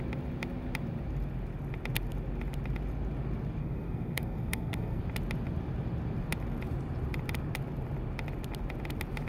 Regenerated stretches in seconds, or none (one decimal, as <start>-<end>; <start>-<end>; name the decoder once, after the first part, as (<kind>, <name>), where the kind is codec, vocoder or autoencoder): 3.6-5.0 (codec, SNAC)